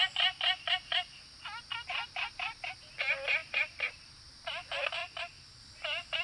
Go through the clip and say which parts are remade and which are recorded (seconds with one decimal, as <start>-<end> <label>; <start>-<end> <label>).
0.0-3.4 recorded; 3.4-4.2 remade; 4.2-5.0 recorded; 5.0-5.6 remade; 5.6-6.2 recorded